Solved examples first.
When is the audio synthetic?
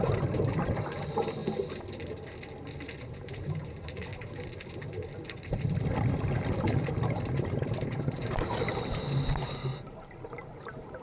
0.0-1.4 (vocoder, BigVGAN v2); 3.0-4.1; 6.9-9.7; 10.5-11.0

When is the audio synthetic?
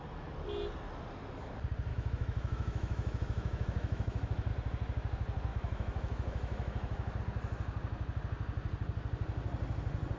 1.9-4.5 (autoencoder, DAC-VAE); 5.5-7.2